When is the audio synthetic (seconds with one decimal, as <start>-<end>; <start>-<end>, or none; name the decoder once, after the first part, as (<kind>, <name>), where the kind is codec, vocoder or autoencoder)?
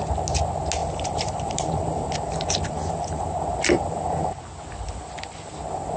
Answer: 0.8-4.4 (vocoder, BigVGAN v2)